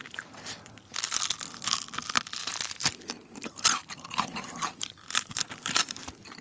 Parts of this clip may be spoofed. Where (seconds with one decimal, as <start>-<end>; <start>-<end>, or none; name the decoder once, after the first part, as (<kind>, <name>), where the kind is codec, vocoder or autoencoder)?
2.4-6.4 (vocoder, BigVGAN v2)